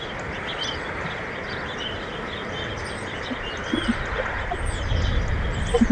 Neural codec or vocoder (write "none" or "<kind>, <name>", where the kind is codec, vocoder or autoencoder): none